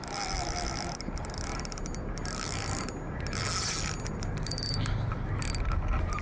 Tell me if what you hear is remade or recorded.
recorded